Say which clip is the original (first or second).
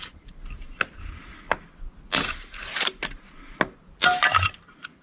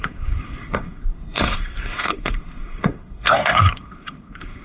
first